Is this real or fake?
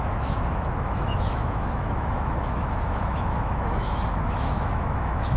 fake